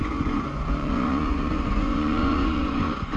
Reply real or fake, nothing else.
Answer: fake